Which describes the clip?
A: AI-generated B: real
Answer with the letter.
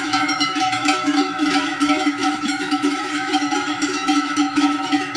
A